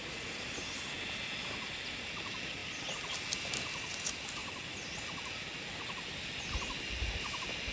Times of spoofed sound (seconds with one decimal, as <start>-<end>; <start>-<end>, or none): 2.6-3.4

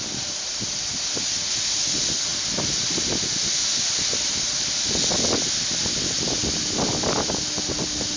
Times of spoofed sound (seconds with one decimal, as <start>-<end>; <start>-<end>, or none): none